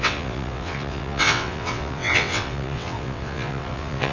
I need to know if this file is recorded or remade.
remade